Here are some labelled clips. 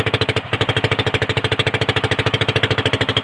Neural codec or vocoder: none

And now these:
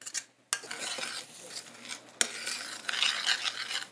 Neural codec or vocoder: none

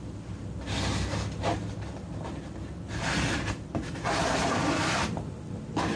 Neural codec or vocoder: vocoder, BigVGAN v2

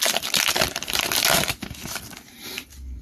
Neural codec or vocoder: none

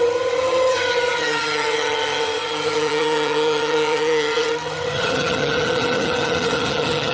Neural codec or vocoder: vocoder, HiFi-GAN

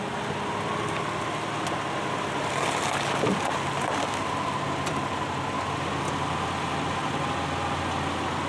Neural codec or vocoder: none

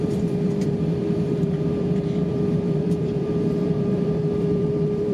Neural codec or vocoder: vocoder, BigVGAN v2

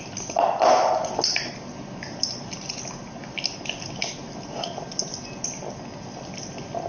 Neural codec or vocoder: none